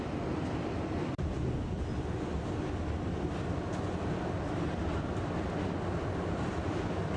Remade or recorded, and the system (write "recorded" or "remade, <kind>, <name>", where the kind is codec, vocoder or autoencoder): remade, vocoder, BigVGAN v2